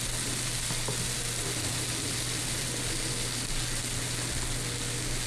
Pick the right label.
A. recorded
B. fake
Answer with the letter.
A